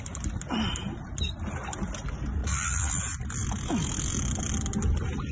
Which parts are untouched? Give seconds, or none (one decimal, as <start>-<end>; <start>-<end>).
0.0-2.4; 2.9-5.3